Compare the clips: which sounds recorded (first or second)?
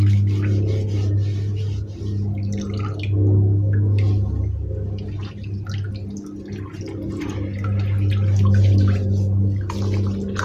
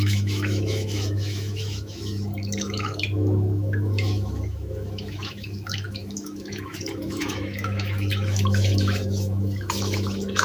first